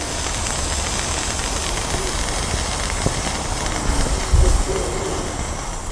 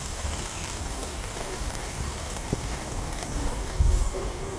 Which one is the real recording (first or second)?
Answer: first